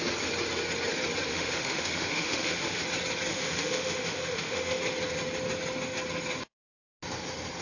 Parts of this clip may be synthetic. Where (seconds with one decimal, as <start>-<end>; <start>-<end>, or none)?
1.3-2.8; 3.3-4.8